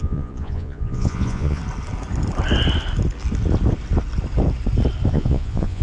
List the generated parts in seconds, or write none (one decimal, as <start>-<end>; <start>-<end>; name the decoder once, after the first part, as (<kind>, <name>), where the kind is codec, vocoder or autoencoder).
0.0-1.6 (vocoder, Vocos); 5.1-5.8

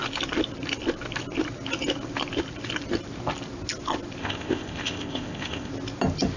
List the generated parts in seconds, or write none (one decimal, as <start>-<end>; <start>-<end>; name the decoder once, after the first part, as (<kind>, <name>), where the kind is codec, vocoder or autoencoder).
4.2-5.7 (codec, ZipCodec)

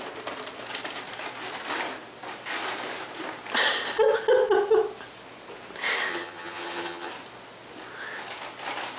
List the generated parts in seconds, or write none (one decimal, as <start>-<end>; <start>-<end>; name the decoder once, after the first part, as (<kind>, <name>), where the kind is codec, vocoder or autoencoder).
6.1-7.1 (vocoder, HiFi-GAN)

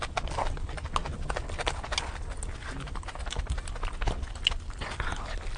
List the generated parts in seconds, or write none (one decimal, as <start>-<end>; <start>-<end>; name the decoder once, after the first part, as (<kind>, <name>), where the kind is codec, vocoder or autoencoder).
none

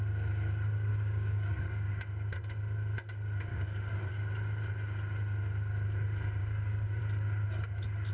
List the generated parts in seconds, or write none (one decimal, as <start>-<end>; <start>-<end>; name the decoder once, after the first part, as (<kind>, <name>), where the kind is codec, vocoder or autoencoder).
0.9-1.9 (codec, DAC); 3.5-4.1; 6.4-7.0